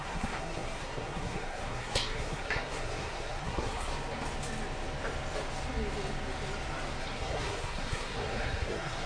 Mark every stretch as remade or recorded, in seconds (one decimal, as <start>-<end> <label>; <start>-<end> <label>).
0.0-3.9 remade; 3.9-7.0 recorded; 7.0-9.1 remade